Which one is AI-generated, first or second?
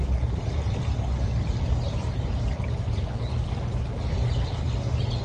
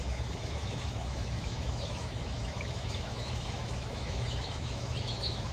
second